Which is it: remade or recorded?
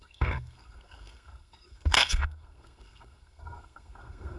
remade